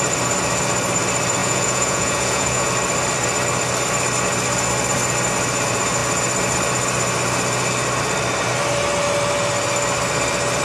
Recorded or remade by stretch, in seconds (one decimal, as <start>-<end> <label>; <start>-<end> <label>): 0.0-1.4 recorded; 1.4-2.7 remade; 2.7-10.6 recorded